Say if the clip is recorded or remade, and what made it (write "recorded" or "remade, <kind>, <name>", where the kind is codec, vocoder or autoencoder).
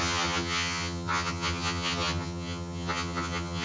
remade, vocoder, HiFi-GAN